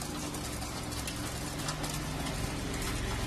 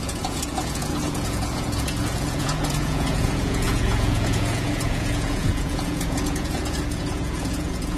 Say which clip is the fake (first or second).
second